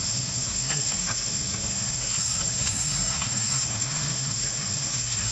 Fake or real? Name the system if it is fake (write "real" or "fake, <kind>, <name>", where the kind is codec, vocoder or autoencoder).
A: fake, codec, SNAC